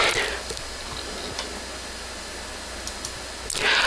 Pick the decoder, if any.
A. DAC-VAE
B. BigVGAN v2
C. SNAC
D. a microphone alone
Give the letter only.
D